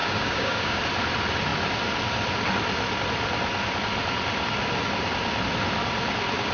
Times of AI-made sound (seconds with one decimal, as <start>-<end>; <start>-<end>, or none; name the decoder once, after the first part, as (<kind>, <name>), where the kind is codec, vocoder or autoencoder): 0.0-0.8 (codec, DAC)